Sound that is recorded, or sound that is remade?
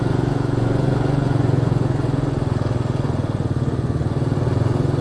remade